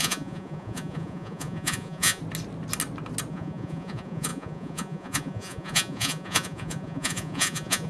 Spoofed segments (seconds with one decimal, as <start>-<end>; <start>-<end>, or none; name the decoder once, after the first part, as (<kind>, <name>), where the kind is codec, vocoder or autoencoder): 0.0-2.2 (vocoder, Vocos); 3.3-7.9